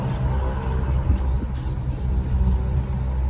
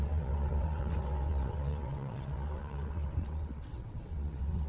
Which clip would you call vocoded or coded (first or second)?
second